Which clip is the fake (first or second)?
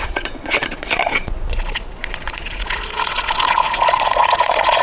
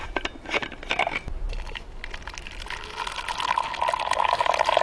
first